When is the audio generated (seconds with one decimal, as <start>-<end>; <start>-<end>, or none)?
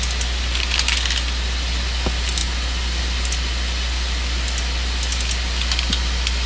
none